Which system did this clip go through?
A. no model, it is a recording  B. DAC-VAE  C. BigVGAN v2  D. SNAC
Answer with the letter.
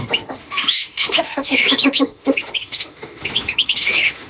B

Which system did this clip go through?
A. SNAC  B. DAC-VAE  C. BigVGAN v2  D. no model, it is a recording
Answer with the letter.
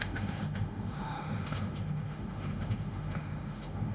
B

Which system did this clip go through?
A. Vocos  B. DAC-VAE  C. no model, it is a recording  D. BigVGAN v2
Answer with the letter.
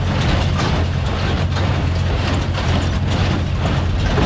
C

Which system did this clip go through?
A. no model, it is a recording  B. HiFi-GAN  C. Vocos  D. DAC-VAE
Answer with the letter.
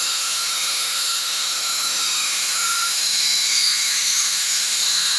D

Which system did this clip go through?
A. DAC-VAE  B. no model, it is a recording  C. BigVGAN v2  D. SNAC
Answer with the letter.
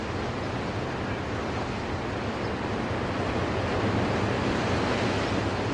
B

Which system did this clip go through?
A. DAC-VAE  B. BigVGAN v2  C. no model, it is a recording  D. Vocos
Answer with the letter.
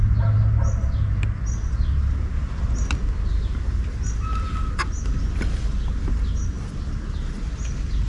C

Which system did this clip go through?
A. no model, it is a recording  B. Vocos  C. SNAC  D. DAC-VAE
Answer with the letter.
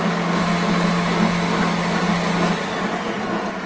A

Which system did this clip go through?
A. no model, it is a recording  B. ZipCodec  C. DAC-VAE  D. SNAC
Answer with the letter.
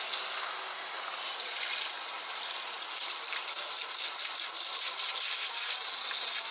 A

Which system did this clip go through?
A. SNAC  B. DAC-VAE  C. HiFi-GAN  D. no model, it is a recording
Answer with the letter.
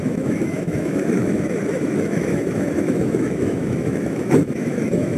B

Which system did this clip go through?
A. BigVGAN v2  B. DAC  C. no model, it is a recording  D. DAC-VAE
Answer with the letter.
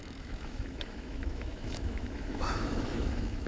D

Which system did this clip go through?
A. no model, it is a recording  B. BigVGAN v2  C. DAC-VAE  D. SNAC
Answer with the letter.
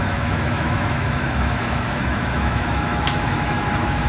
C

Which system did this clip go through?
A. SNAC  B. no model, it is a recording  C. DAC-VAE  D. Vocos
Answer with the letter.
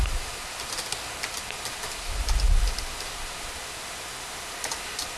B